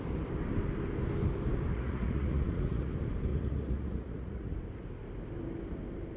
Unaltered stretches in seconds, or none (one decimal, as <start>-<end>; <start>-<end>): 0.0-1.7; 2.9-3.3; 4.5-6.2